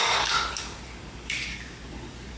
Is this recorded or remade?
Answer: remade